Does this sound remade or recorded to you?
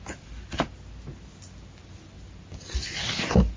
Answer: recorded